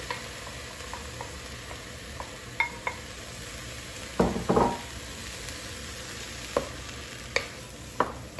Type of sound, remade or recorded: recorded